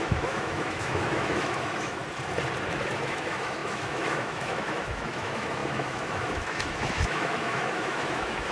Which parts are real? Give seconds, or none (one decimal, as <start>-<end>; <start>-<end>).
2.0-2.7